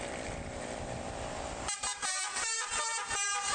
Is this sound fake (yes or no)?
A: yes